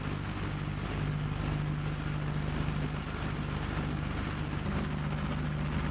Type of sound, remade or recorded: recorded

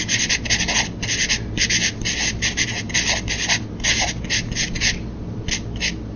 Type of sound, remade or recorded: recorded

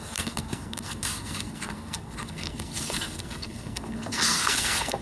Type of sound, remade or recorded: remade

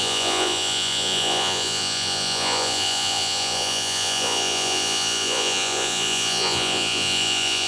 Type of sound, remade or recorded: remade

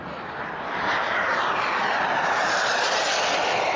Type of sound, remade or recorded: recorded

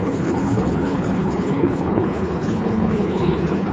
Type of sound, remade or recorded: remade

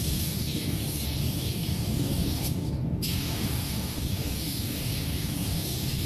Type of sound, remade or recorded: remade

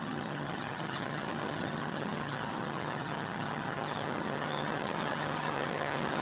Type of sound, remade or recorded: remade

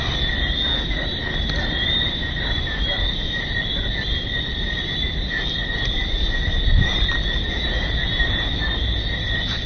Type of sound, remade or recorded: remade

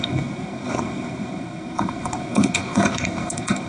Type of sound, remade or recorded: remade